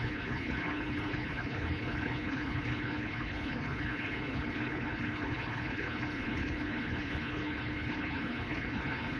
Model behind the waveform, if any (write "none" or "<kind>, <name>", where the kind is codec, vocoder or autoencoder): codec, HILCodec